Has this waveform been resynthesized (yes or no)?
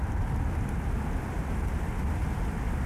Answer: no